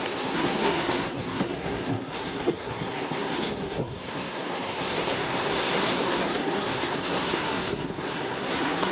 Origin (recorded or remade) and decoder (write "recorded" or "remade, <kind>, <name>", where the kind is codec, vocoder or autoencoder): remade, codec, SNAC